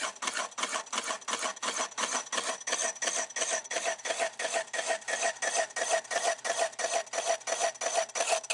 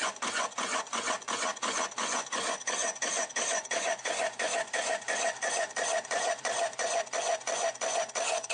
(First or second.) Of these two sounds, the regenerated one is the second